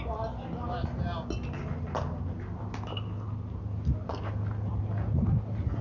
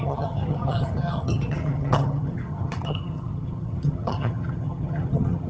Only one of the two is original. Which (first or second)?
first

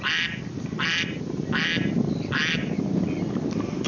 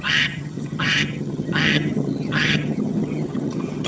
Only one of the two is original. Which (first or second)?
first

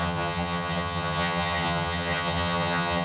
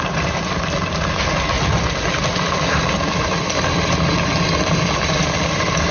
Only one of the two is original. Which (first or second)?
second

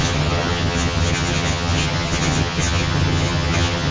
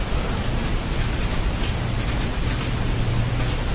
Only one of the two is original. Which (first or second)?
second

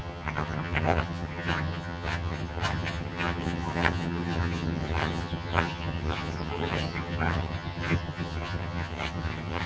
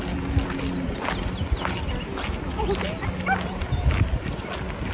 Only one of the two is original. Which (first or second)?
second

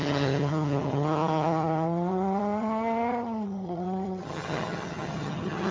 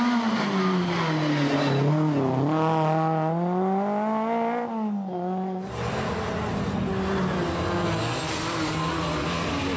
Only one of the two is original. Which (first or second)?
second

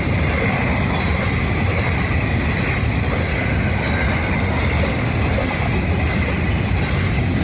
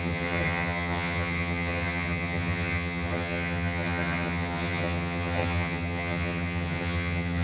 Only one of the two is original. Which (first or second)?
first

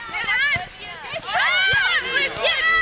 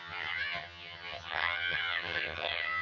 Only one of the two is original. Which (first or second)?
first